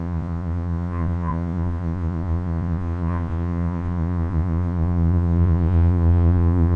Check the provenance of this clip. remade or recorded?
remade